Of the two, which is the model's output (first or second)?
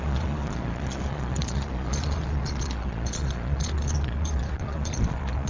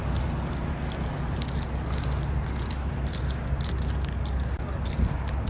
first